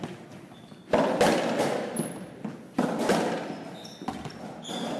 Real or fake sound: real